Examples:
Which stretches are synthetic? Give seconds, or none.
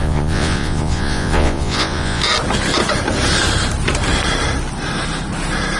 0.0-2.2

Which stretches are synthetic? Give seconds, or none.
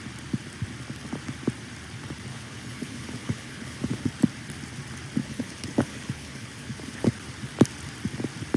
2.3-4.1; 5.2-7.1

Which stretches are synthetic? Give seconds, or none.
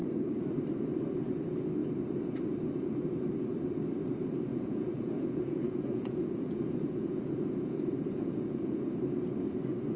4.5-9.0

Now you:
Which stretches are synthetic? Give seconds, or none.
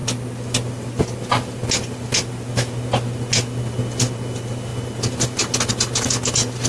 none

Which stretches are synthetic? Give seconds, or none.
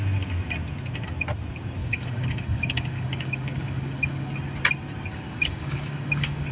1.8-4.3; 5.1-6.5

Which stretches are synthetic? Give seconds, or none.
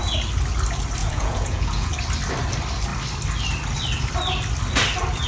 1.0-1.9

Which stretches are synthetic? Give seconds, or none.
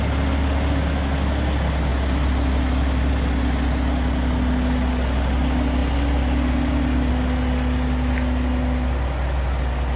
none